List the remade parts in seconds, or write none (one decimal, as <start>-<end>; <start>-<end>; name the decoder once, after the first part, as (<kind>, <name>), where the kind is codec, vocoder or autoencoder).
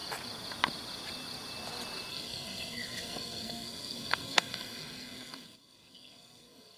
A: 2.1-6.8 (codec, SNAC)